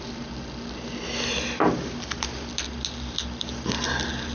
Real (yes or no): yes